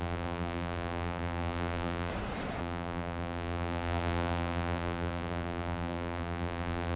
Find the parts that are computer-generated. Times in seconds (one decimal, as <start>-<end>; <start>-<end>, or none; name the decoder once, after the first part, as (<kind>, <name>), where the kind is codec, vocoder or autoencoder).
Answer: 0.0-2.1 (vocoder, BigVGAN v2); 2.6-7.0